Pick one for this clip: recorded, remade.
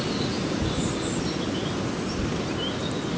recorded